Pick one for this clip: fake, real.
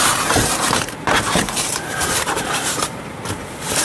fake